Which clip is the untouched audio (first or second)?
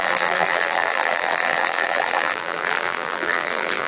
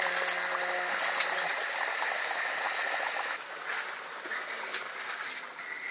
second